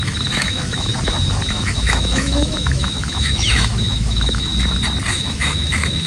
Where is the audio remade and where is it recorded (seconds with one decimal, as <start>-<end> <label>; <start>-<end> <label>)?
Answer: 0.0-0.9 remade; 0.9-1.5 recorded; 1.5-4.5 remade; 4.5-5.1 recorded; 5.1-6.1 remade